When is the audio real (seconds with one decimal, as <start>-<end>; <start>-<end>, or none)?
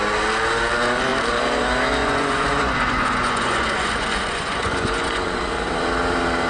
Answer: 0.0-2.0; 5.4-6.5